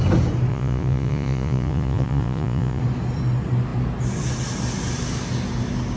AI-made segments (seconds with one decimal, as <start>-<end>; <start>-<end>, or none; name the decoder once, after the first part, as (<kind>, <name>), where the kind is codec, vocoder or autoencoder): 0.5-2.8 (vocoder, Vocos)